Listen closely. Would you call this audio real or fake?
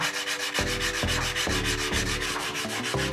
real